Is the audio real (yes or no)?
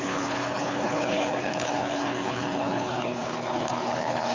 no